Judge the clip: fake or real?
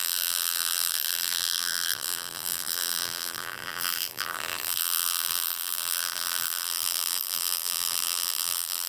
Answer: fake